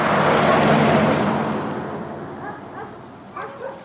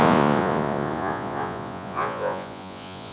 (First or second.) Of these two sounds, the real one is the first